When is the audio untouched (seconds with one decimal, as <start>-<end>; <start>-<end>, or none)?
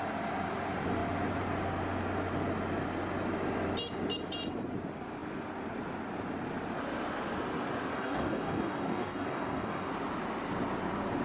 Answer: 0.0-7.9; 9.9-11.2